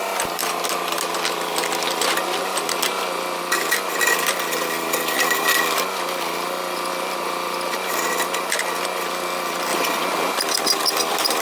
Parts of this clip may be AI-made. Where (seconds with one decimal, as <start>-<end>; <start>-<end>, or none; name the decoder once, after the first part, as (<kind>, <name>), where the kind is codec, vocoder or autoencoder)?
0.0-0.4 (vocoder, BigVGAN v2); 3.4-9.7; 10.4-11.4